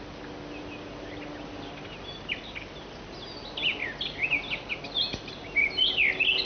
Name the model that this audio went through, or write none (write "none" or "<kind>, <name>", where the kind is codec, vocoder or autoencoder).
none